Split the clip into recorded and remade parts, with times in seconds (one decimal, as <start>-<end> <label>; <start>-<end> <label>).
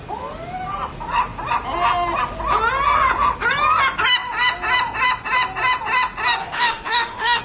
0.0-6.4 recorded; 6.4-7.4 remade